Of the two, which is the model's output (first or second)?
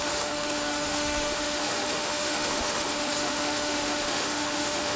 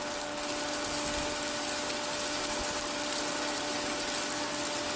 first